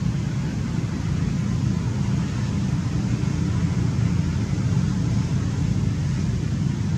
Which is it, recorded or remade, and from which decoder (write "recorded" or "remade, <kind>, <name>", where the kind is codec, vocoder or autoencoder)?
recorded